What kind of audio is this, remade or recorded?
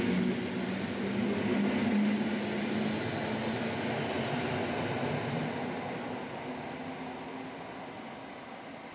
recorded